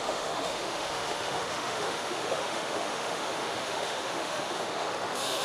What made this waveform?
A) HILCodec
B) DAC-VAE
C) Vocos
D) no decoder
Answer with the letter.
B